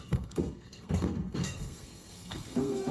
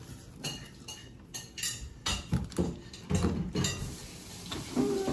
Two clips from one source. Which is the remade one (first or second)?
first